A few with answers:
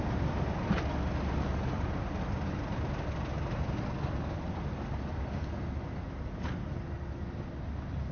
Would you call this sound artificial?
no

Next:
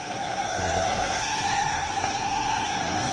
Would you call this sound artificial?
yes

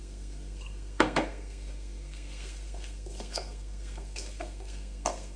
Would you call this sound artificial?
yes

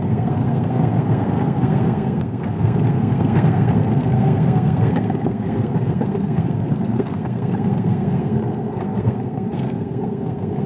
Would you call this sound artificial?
yes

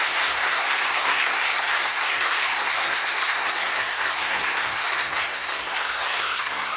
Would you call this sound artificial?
yes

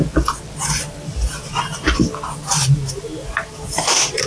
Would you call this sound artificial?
no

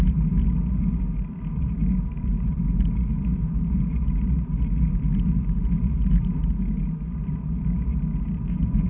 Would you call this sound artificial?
no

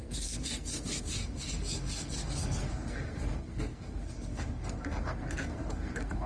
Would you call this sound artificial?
yes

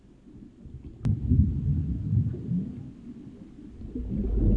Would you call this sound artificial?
no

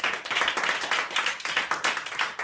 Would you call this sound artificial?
no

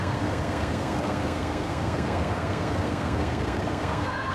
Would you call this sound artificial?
yes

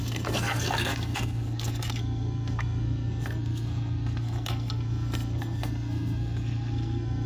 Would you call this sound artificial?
yes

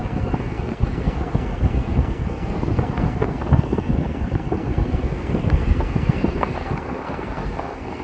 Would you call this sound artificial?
yes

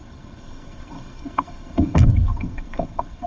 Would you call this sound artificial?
yes